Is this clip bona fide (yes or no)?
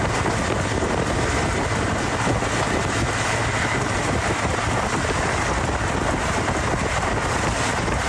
yes